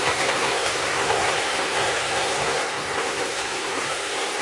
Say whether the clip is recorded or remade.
remade